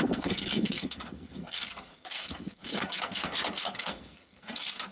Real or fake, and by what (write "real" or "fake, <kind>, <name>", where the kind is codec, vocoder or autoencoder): fake, codec, SNAC